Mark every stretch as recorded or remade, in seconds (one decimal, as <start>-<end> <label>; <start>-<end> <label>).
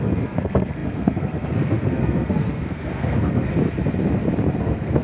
0.0-3.5 remade; 3.5-4.6 recorded; 4.6-5.0 remade